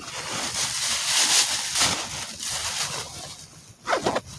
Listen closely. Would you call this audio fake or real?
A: real